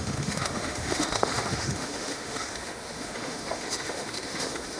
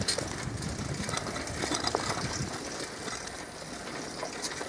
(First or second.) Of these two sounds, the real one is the second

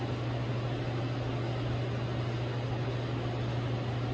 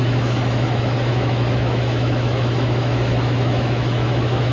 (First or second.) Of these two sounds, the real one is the first